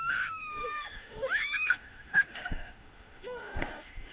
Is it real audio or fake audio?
fake